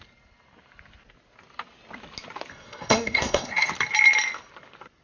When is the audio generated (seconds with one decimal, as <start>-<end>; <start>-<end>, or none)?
2.5-3.7